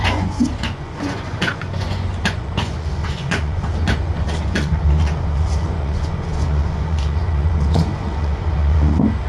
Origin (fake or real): fake